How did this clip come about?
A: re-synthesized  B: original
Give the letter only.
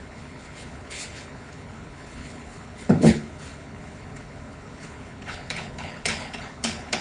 A